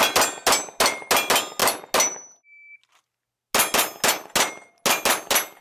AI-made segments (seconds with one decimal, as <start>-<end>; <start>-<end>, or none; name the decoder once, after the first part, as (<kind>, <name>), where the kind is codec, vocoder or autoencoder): none